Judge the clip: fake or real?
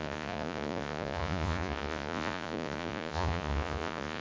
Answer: fake